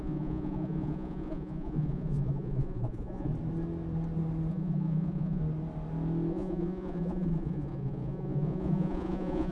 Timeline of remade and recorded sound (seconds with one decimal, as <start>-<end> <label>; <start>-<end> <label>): 0.0-3.3 remade; 3.3-4.5 recorded; 4.5-5.4 remade; 5.4-6.3 recorded; 6.3-9.5 remade